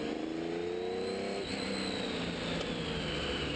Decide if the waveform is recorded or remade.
recorded